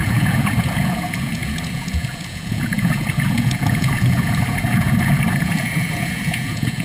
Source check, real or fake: fake